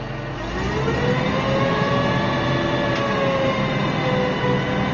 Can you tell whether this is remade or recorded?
recorded